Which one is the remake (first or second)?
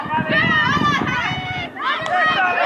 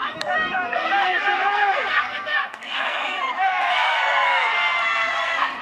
second